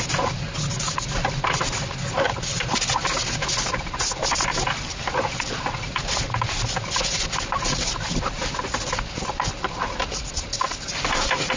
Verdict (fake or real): real